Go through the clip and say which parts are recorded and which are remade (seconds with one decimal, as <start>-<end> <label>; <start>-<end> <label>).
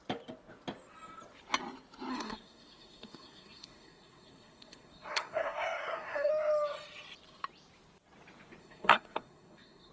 0.0-2.1 recorded; 2.1-6.3 remade; 6.3-8.6 recorded; 8.6-9.9 remade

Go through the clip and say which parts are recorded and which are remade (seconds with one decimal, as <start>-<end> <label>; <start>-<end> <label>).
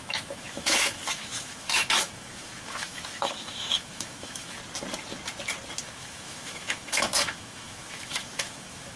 0.0-4.6 remade; 4.6-5.8 recorded; 5.8-9.0 remade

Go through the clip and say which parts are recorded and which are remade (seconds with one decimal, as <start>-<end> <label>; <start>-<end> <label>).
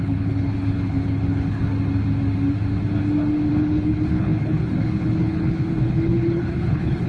0.0-1.6 remade; 1.6-3.5 recorded; 3.5-7.1 remade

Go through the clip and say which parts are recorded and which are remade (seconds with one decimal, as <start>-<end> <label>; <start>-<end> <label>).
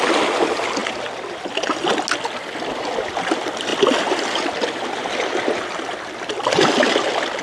0.0-7.4 recorded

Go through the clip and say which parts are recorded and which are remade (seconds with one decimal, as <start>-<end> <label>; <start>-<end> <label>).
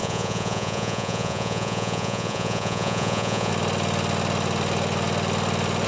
0.0-3.5 remade; 3.5-5.9 recorded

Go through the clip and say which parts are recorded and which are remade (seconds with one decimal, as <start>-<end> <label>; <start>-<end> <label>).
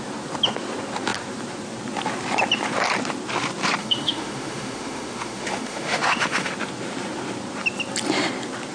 0.0-3.8 recorded; 3.8-6.5 remade; 6.5-8.7 recorded